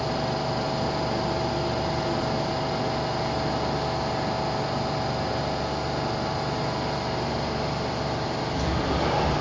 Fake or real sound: real